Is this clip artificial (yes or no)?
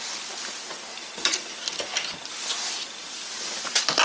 no